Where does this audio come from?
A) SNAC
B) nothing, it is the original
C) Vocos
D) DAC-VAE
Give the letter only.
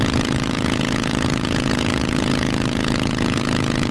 C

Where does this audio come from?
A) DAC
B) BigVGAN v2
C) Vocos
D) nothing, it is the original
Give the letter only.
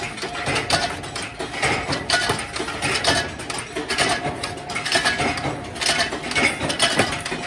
D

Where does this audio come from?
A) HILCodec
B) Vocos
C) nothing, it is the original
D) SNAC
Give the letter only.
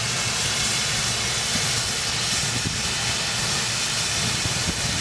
C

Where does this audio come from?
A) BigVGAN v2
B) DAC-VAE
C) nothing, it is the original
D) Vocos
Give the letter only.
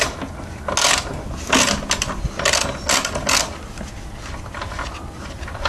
C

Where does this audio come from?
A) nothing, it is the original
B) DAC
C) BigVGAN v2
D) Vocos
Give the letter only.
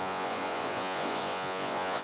D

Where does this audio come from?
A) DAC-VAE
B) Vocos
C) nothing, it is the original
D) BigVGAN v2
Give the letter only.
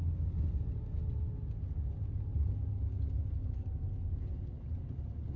C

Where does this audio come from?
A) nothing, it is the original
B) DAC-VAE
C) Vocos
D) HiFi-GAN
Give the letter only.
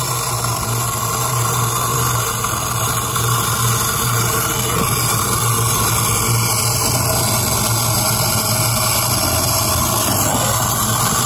A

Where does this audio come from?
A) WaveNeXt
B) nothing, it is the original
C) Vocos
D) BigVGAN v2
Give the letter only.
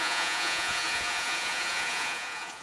C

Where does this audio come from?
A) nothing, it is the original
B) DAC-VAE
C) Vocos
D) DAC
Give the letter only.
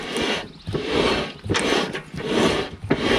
A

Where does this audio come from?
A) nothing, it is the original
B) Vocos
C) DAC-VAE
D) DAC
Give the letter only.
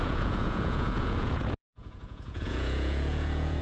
B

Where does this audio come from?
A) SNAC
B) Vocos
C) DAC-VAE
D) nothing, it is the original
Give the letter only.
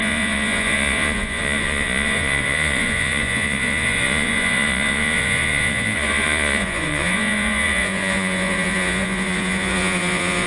B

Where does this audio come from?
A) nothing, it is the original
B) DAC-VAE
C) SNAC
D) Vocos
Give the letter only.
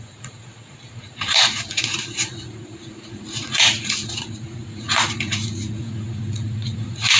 D